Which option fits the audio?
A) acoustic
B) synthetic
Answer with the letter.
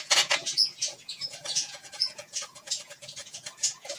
B